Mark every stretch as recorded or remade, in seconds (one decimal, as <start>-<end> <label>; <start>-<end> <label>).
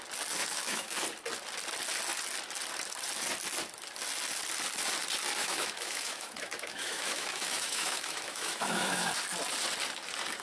0.0-0.4 recorded; 0.4-1.0 remade; 1.0-5.4 recorded; 5.4-9.1 remade; 9.1-10.4 recorded